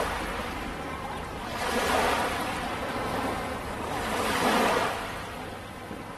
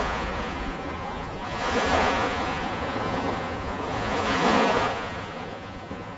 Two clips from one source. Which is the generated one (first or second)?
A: second